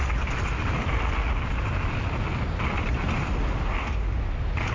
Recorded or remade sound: recorded